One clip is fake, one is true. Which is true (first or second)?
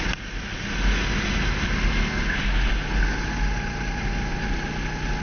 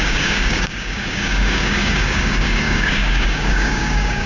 first